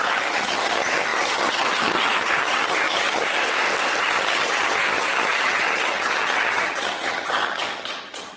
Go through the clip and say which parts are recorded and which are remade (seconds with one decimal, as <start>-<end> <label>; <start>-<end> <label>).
0.0-3.4 remade; 3.4-4.0 recorded; 4.0-8.4 remade